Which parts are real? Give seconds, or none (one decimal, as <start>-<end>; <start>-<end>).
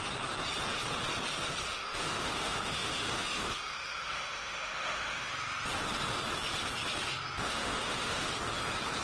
0.0-1.7; 5.3-7.4; 8.3-9.0